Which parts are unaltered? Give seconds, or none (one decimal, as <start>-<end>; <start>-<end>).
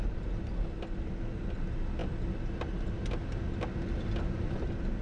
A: 0.0-5.0